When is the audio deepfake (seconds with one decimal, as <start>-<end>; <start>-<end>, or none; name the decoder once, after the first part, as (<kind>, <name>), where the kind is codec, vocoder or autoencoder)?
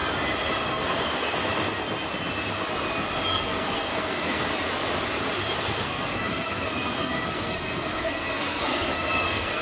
0.7-1.5 (codec, SNAC); 3.3-4.5; 5.6-9.6